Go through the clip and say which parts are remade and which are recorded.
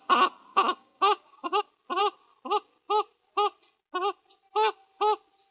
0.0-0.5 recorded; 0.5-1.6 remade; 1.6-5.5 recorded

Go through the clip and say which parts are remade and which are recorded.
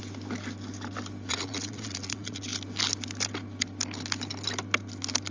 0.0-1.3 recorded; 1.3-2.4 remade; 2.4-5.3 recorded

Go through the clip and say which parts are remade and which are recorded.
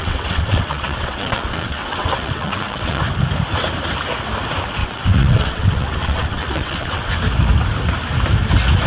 0.0-3.0 remade; 3.0-4.8 recorded; 4.8-7.1 remade; 7.1-8.9 recorded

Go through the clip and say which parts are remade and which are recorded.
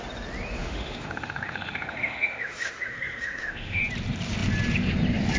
0.0-0.6 recorded; 0.6-3.8 remade; 3.8-5.4 recorded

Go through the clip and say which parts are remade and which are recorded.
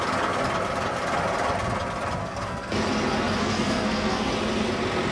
0.0-2.2 recorded; 2.2-2.8 remade; 2.8-3.4 recorded; 3.4-4.3 remade; 4.3-5.1 recorded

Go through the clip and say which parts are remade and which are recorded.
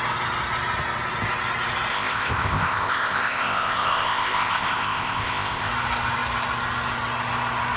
0.0-1.9 recorded; 1.9-5.7 remade; 5.7-7.8 recorded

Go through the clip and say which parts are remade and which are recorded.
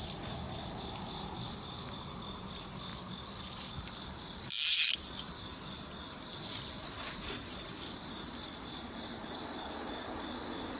0.0-10.8 recorded